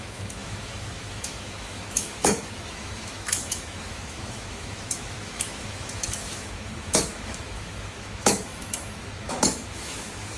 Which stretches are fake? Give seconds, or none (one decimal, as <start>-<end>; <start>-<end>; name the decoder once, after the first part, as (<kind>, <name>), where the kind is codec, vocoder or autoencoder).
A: 0.0-10.4 (autoencoder, DAC-VAE)